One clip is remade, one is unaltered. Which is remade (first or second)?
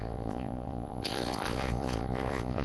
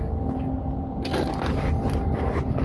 first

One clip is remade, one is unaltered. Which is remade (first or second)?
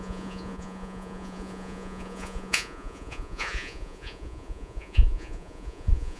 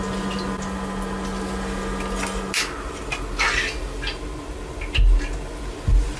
first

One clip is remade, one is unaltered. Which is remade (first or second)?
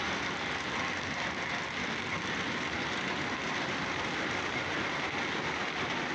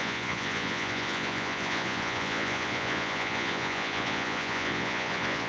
second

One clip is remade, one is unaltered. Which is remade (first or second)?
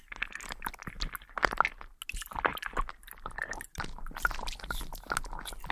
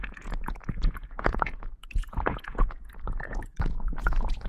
second